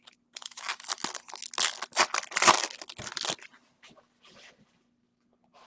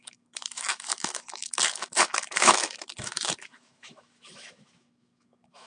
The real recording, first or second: first